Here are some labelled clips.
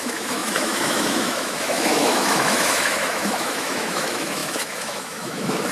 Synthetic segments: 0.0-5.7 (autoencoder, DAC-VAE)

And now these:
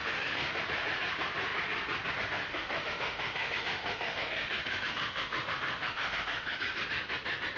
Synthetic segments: 0.0-0.6 (autoencoder, DAC-VAE); 2.5-6.6